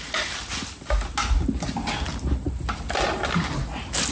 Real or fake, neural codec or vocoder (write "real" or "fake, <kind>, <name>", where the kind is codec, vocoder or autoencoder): real